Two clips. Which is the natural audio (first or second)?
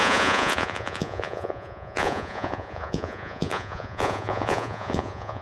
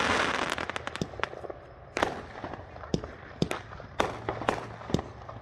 second